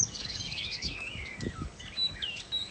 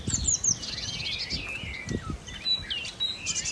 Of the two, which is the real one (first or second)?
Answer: second